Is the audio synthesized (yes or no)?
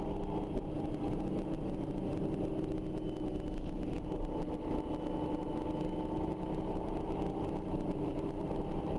no